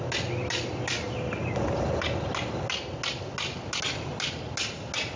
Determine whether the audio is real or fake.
real